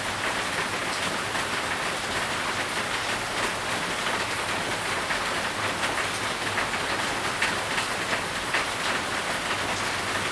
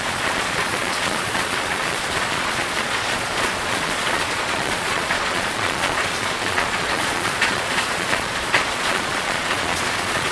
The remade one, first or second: second